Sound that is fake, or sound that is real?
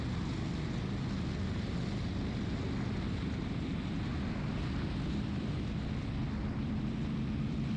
real